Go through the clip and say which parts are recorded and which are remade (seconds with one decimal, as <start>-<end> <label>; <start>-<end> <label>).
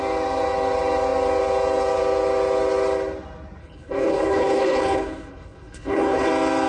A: 0.0-3.6 recorded; 3.6-6.3 remade; 6.3-6.7 recorded